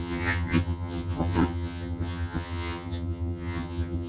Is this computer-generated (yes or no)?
yes